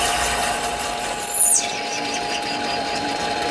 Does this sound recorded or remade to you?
remade